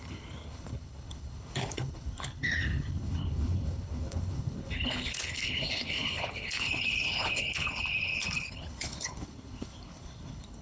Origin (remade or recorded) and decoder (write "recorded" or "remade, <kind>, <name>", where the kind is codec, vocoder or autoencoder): remade, codec, HILCodec